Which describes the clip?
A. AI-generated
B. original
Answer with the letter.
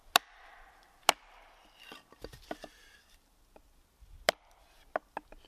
B